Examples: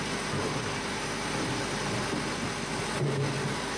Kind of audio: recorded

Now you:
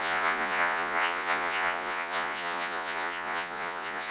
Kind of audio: remade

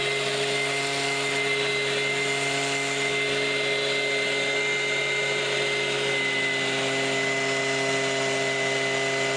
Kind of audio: recorded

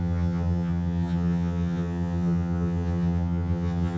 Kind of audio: remade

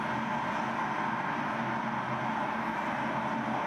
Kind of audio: recorded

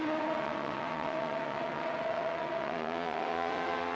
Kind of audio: remade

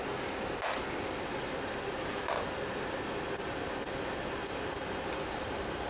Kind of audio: recorded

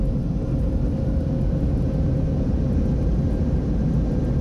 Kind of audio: recorded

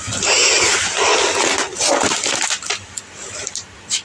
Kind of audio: recorded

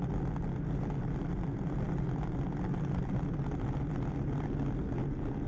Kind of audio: recorded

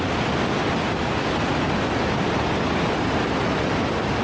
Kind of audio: recorded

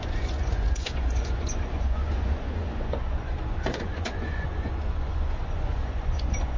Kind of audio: remade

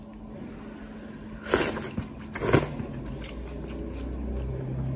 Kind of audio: recorded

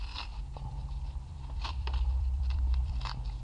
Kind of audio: remade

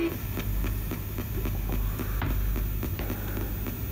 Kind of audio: recorded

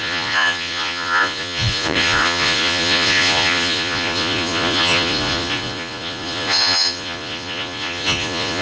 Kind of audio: remade